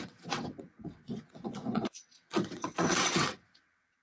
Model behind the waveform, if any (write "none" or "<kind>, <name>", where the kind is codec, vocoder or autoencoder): vocoder, WaveNeXt